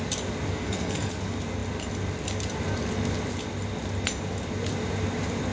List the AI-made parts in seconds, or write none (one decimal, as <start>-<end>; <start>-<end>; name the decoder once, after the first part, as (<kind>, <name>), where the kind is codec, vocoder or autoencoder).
0.5-1.1 (codec, SNAC)